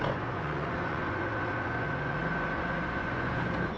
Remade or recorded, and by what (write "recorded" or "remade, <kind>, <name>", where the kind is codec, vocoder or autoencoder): remade, vocoder, Vocos